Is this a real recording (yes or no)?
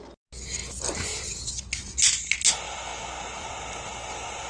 yes